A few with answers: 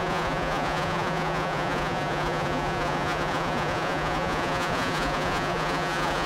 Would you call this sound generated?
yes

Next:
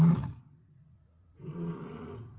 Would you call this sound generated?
yes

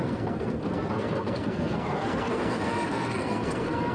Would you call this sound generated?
yes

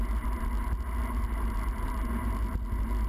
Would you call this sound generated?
no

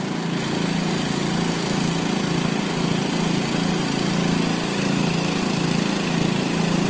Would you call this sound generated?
no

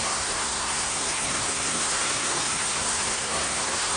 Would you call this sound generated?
yes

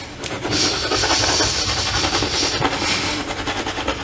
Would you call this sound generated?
no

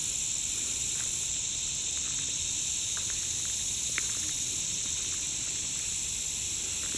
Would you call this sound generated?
no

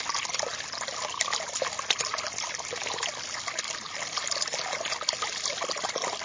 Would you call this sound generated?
no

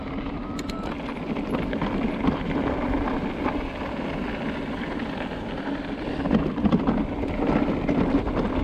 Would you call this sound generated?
no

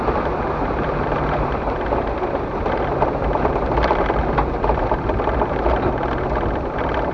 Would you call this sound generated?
yes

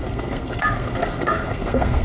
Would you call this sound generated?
yes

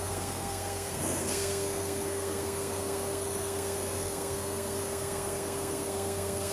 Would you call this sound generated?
yes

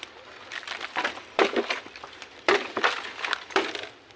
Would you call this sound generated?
yes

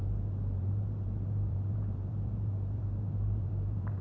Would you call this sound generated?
yes